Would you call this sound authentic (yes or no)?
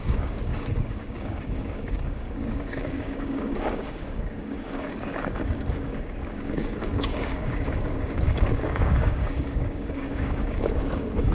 no